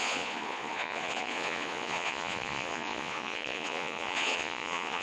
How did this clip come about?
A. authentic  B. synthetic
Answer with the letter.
B